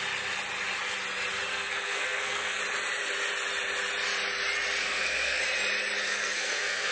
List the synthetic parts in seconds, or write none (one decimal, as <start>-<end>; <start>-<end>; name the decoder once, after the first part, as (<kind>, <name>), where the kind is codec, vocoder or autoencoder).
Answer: 1.5-2.6 (codec, SNAC); 4.8-5.4; 6.0-6.9